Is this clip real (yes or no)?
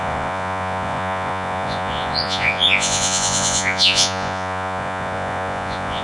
no